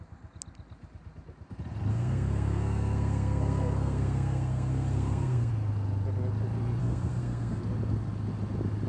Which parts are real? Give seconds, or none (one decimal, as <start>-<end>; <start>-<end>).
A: 0.0-1.9; 5.5-6.8; 7.6-8.9